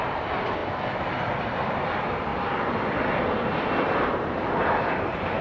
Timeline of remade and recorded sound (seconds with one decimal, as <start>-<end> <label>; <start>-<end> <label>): 0.0-5.4 recorded

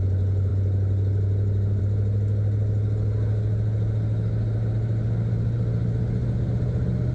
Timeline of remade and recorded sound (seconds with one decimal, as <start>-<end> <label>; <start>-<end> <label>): 0.0-7.1 recorded

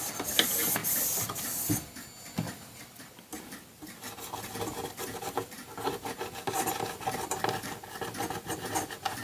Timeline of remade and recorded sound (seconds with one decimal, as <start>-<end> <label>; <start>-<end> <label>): 0.0-0.8 recorded; 0.8-1.4 remade; 1.4-3.3 recorded; 3.3-6.1 remade; 6.1-9.2 recorded

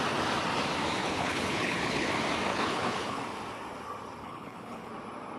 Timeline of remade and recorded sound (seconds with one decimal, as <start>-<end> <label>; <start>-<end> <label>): 0.0-1.0 recorded; 1.0-2.1 remade; 2.1-2.5 recorded; 2.5-3.2 remade; 3.2-4.2 recorded; 4.2-4.9 remade; 4.9-5.4 recorded

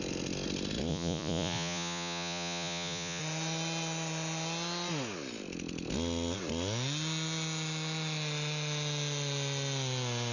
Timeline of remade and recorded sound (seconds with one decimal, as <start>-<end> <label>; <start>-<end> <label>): 0.0-0.9 recorded; 0.9-3.2 remade; 3.2-10.3 recorded